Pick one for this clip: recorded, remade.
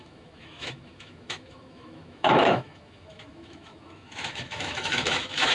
remade